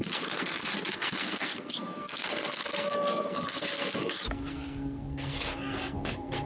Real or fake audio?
fake